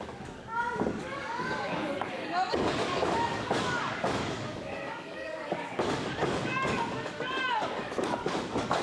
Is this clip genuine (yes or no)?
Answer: no